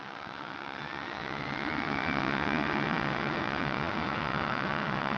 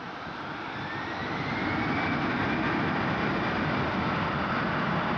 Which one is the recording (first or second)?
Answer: second